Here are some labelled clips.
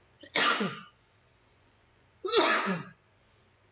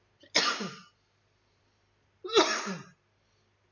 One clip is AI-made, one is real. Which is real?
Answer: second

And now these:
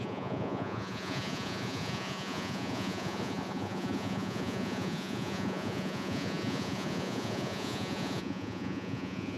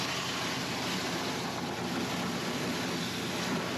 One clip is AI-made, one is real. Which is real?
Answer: second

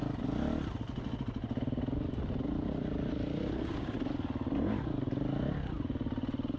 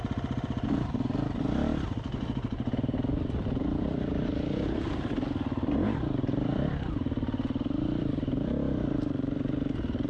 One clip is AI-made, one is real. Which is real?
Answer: first